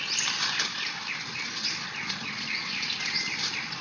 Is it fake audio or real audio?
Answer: real